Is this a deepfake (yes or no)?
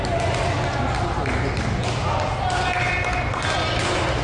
no